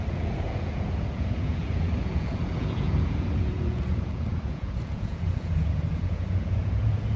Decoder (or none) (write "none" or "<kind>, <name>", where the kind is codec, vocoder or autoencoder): vocoder, Vocos